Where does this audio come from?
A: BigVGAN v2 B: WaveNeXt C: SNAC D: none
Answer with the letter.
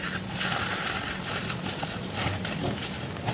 D